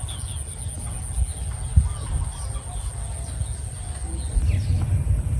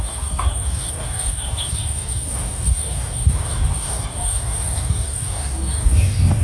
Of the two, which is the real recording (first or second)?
first